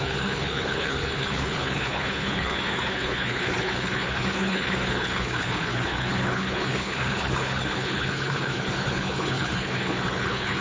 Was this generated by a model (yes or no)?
yes